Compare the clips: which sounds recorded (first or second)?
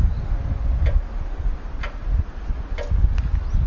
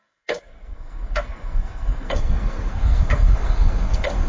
first